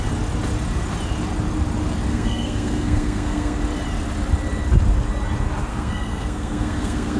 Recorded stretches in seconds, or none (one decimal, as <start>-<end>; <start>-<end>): 0.0-2.1; 3.6-5.7